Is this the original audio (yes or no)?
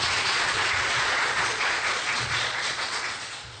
no